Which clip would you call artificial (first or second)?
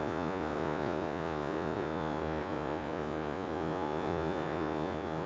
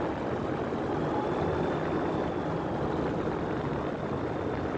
first